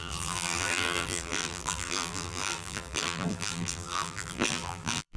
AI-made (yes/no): yes